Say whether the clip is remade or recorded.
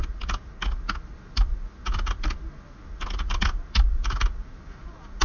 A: recorded